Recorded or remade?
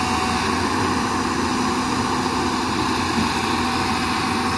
recorded